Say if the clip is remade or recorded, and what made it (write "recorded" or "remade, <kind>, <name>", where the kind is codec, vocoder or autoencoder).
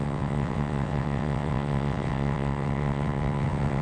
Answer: remade, vocoder, WaveNeXt